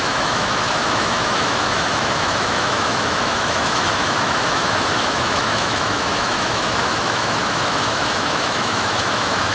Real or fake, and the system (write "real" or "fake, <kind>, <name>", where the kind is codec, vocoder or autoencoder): fake, autoencoder, DAC-VAE